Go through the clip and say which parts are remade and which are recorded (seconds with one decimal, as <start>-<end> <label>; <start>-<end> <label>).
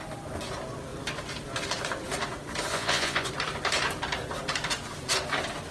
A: 0.0-2.7 recorded; 2.7-3.3 remade; 3.3-5.7 recorded